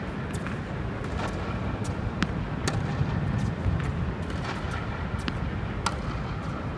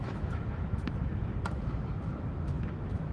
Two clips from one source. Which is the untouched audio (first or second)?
first